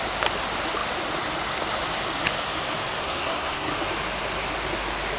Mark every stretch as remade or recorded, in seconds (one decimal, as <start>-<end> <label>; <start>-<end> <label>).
0.0-3.0 recorded; 3.0-3.7 remade; 3.7-5.2 recorded